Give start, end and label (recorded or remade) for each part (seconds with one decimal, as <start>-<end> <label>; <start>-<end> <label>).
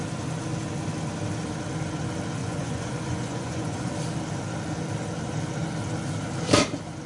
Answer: 0.0-2.4 recorded; 2.4-3.9 remade; 3.9-7.1 recorded